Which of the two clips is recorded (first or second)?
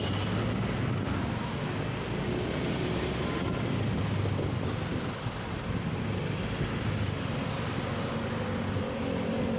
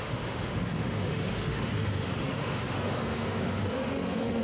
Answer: first